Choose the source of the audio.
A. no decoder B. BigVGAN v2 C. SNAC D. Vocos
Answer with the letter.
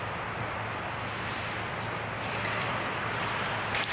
A